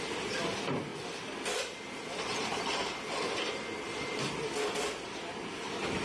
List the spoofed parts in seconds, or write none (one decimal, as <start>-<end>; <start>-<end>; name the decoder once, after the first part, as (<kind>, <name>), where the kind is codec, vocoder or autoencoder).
none